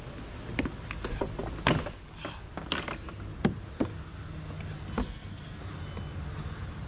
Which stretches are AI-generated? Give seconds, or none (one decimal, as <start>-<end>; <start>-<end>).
5.0-5.6